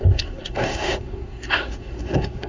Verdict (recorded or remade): remade